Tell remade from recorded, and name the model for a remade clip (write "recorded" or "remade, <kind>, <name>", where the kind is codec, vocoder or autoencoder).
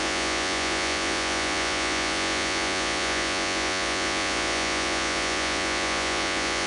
remade, vocoder, Vocos